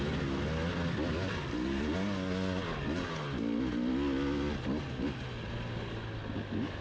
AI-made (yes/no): no